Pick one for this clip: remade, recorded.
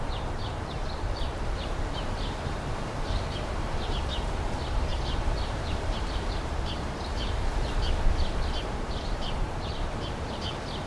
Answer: remade